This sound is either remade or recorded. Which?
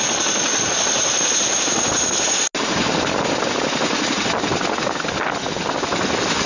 recorded